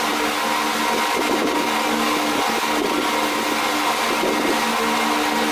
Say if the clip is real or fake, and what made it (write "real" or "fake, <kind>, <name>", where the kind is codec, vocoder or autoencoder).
real